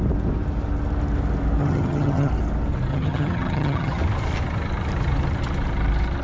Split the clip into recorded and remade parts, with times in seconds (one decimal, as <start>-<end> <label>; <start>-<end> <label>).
0.0-1.6 recorded; 1.6-2.3 remade; 2.3-2.9 recorded; 2.9-4.0 remade; 4.0-6.2 recorded